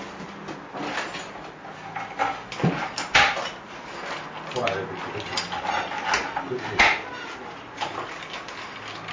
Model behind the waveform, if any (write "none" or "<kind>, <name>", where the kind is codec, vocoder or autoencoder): none